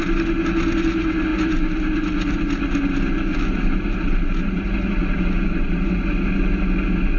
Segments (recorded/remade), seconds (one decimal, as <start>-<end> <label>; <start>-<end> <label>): 0.0-3.3 recorded; 3.3-6.7 remade; 6.7-7.2 recorded

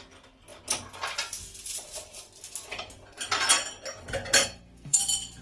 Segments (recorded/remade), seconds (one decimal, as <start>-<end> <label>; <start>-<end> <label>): 0.0-4.4 recorded; 4.4-5.0 remade; 5.0-5.4 recorded